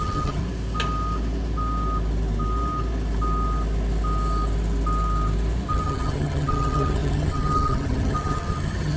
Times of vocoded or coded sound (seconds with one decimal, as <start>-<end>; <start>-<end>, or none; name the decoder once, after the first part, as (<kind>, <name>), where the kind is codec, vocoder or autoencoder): 0.0-0.4 (vocoder, HiFi-GAN); 5.7-9.0